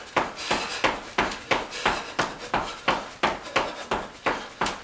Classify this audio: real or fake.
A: real